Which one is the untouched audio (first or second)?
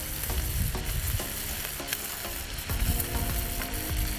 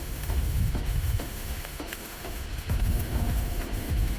first